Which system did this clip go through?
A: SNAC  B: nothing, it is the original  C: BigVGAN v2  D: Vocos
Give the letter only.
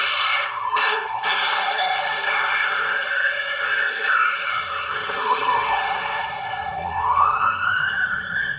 A